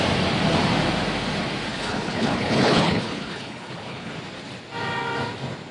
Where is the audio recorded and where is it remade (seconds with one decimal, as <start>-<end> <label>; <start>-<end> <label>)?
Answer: 0.0-1.7 recorded; 1.7-4.1 remade; 4.1-5.7 recorded